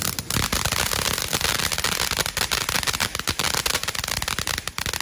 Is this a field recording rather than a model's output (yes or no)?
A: yes